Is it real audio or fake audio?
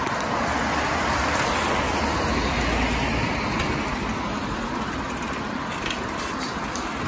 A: real